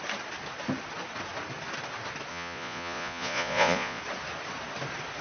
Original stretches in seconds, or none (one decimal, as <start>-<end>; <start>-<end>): 0.0-2.3; 4.0-5.2